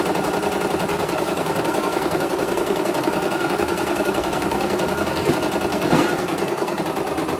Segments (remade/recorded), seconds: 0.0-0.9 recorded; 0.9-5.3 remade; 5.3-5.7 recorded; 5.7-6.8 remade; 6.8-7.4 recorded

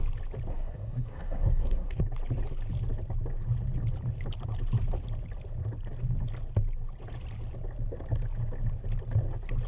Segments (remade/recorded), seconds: 0.0-0.5 recorded; 0.5-2.0 remade; 2.0-9.7 recorded

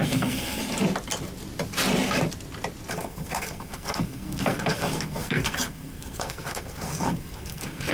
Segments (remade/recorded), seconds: 0.0-0.6 remade; 0.6-2.9 recorded; 2.9-7.9 remade

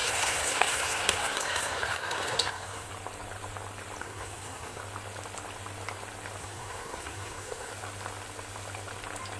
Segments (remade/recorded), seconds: 0.0-2.9 remade; 2.9-4.0 recorded; 4.0-4.8 remade; 4.8-6.4 recorded; 6.4-7.7 remade; 7.7-9.4 recorded

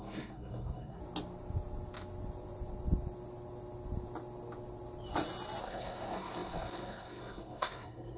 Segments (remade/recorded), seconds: 0.0-1.0 remade; 1.0-5.6 recorded; 5.6-8.2 remade

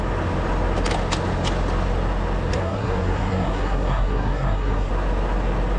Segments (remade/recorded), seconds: 0.0-2.5 recorded; 2.5-4.9 remade; 4.9-5.8 recorded

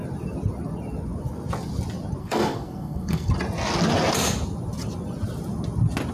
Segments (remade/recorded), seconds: 0.0-2.2 recorded; 2.2-3.3 remade; 3.3-6.1 recorded